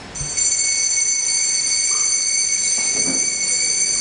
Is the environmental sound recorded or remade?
recorded